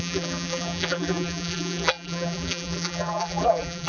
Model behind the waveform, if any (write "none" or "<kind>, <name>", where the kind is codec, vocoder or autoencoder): vocoder, BigVGAN v2